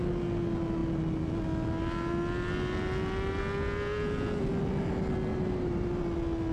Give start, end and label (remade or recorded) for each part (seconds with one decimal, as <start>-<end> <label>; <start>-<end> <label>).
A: 0.0-5.3 recorded; 5.3-6.0 remade; 6.0-6.5 recorded